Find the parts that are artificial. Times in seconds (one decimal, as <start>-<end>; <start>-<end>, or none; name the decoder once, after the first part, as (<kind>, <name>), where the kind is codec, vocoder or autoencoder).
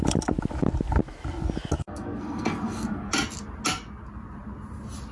1.8-3.1 (codec, SNAC)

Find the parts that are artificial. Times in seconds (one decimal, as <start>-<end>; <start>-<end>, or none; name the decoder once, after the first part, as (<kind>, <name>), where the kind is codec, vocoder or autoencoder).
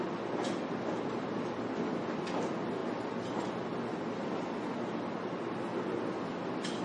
none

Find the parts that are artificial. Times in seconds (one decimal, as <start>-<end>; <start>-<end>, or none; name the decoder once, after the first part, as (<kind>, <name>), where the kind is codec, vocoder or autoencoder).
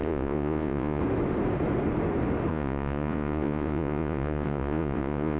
0.0-1.0 (vocoder, Vocos); 2.5-5.4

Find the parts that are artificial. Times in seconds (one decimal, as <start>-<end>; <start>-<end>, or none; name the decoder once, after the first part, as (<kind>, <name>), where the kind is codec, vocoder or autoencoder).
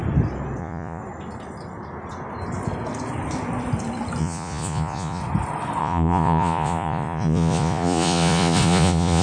0.6-1.0 (vocoder, Vocos); 4.2-5.2; 5.8-9.2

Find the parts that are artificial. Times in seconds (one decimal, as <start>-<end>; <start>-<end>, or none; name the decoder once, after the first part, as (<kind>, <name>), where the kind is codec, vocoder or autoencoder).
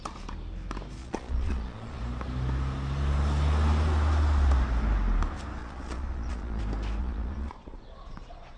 1.0-2.0 (vocoder, Vocos); 5.6-6.6; 7.0-8.6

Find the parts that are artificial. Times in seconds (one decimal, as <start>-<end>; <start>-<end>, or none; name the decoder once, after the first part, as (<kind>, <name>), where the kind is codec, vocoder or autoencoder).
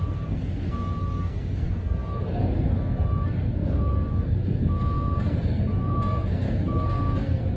0.0-7.6 (codec, SNAC)